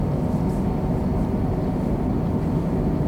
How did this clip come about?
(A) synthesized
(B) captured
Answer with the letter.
B